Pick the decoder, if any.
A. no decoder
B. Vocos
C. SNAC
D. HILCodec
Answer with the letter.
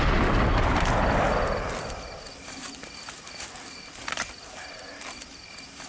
A